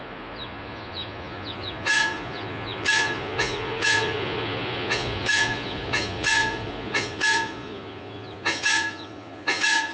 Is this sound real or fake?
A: fake